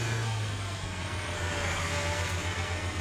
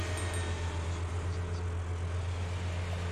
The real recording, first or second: second